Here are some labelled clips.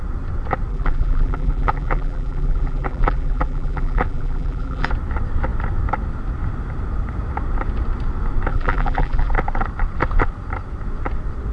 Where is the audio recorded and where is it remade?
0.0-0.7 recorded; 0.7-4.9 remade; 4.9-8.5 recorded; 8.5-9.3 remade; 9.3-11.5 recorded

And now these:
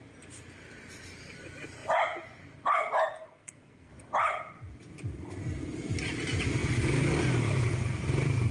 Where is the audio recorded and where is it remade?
0.0-3.1 recorded; 3.1-3.9 remade; 3.9-8.5 recorded

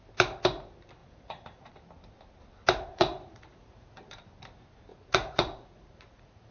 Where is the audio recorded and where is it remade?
0.0-1.0 recorded; 1.0-1.7 remade; 1.7-2.9 recorded; 2.9-4.0 remade; 4.0-4.9 recorded; 4.9-6.5 remade

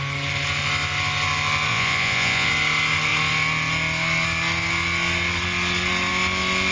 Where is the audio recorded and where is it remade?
0.0-1.7 recorded; 1.7-2.5 remade; 2.5-6.7 recorded

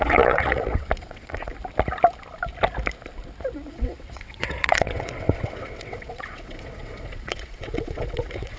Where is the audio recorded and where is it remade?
0.0-1.5 remade; 1.5-3.7 recorded; 3.7-8.6 remade

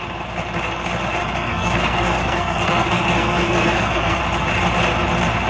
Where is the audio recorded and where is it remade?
0.0-1.2 recorded; 1.2-4.2 remade; 4.2-5.5 recorded

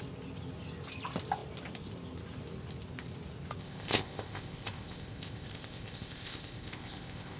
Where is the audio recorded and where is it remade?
0.0-3.6 recorded; 3.6-7.4 remade

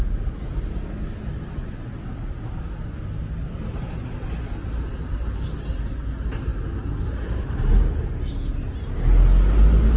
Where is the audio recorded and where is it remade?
0.0-10.0 recorded